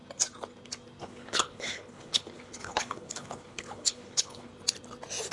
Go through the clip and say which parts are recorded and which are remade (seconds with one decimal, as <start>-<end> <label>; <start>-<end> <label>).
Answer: 0.0-1.0 recorded; 1.0-4.5 remade; 4.5-5.3 recorded